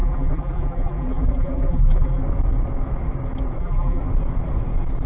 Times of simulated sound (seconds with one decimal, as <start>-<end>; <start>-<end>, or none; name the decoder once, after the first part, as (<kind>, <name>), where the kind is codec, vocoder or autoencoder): 0.0-2.2 (vocoder, BigVGAN v2); 3.6-4.0